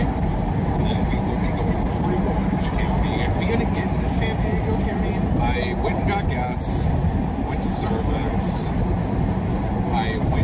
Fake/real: real